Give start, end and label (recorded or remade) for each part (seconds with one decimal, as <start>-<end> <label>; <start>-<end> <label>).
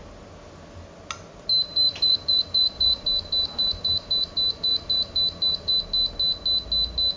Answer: 0.0-1.7 recorded; 1.7-5.7 remade; 5.7-7.2 recorded